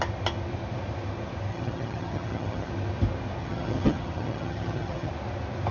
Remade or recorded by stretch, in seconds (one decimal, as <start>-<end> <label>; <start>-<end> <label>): 0.0-1.5 recorded; 1.5-2.7 remade; 2.7-3.4 recorded; 3.4-5.1 remade; 5.1-5.7 recorded